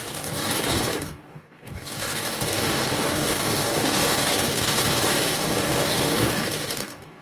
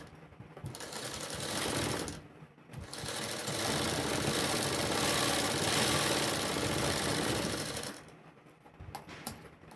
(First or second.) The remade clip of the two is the first